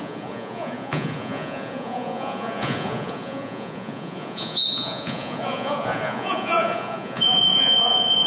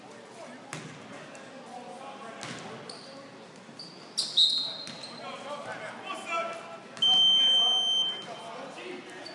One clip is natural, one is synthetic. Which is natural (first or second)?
second